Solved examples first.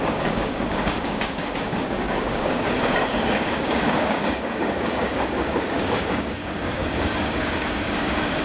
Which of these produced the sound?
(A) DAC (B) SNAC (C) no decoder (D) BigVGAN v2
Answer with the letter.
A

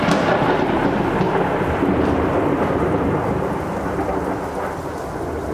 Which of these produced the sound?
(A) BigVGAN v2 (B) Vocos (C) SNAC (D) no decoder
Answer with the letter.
D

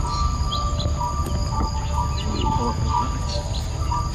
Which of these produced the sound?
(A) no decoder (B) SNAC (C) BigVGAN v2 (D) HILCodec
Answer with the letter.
A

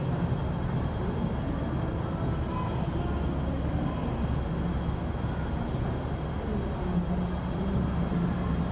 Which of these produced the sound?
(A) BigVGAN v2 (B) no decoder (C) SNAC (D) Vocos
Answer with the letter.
B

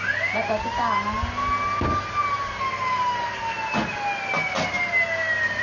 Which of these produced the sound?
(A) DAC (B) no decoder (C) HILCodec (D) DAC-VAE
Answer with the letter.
B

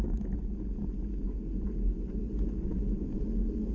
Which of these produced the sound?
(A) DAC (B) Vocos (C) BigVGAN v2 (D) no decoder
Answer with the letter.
D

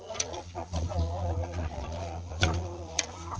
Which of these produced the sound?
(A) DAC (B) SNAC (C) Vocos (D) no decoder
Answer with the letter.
C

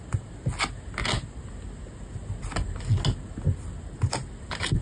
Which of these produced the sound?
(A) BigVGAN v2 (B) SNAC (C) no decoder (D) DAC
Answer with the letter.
C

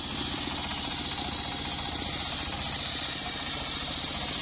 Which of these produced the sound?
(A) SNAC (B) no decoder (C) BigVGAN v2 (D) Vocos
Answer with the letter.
B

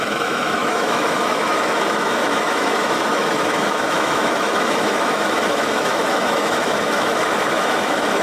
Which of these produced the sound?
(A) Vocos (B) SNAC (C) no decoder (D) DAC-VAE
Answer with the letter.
D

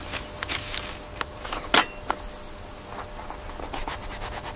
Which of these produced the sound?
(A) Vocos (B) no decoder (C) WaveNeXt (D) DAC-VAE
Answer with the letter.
B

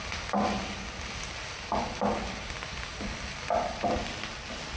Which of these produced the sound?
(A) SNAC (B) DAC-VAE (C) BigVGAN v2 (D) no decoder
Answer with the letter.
D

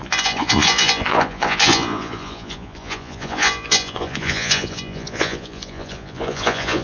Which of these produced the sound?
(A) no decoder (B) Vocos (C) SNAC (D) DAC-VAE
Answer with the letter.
B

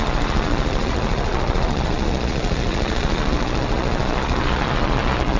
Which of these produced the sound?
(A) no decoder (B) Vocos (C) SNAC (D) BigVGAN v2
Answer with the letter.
B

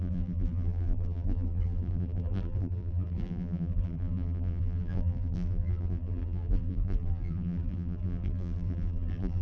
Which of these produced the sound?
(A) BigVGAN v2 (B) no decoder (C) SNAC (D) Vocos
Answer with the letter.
A